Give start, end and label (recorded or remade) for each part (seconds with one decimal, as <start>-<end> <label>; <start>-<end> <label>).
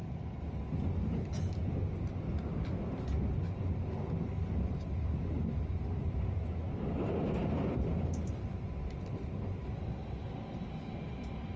0.0-11.6 recorded